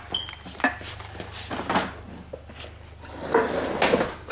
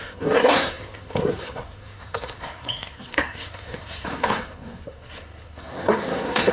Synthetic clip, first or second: second